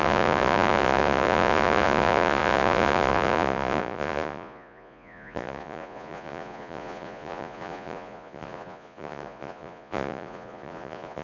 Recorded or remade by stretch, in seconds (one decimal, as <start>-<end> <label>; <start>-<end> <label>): 0.0-11.2 remade